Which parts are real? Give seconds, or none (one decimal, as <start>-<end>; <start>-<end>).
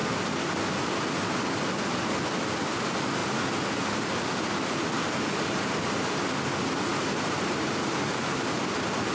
0.0-6.9; 8.6-9.1